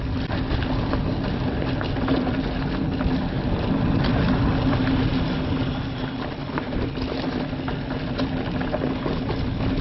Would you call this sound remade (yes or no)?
no